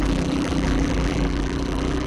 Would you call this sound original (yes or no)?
no